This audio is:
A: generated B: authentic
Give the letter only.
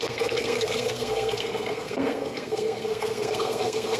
A